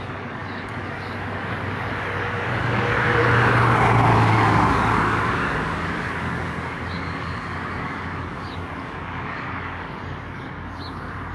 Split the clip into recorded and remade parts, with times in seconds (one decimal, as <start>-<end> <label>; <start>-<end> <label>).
0.0-11.3 remade